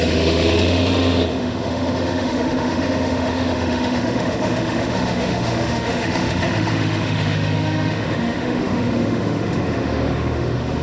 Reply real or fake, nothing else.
fake